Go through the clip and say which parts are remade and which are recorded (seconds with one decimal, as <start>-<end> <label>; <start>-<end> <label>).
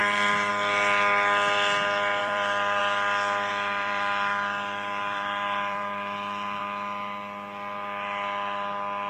0.0-0.5 remade; 0.5-2.2 recorded; 2.2-2.8 remade; 2.8-3.5 recorded; 3.5-6.6 remade; 6.6-9.1 recorded